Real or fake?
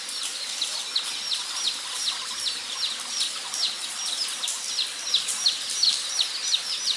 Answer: real